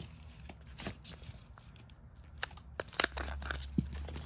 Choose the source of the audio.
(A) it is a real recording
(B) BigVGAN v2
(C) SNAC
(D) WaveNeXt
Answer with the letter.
A